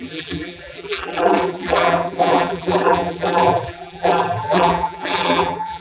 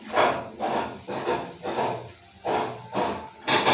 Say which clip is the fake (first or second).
first